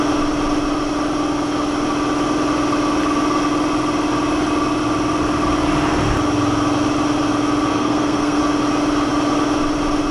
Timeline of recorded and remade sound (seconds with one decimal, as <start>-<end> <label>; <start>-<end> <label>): 0.0-7.7 recorded; 7.7-8.4 remade; 8.4-10.1 recorded